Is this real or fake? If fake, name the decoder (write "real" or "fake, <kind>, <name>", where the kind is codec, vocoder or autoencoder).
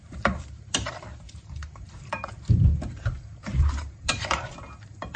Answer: fake, vocoder, BigVGAN v2